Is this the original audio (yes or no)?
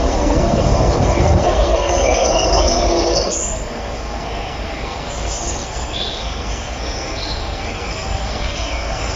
no